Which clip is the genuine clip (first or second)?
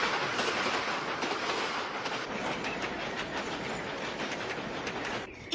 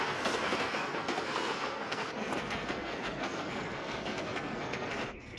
first